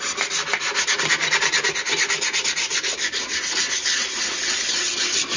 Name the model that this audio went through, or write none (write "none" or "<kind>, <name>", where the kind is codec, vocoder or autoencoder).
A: none